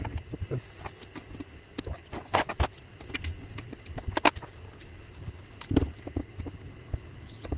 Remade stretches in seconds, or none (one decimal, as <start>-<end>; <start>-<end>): 2.0-2.5